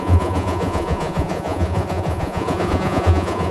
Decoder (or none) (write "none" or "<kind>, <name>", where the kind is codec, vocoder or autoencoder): vocoder, Vocos